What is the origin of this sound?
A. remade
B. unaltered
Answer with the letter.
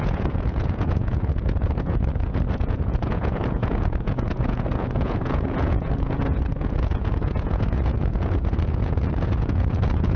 A